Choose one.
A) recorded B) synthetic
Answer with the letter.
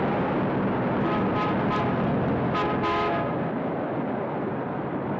A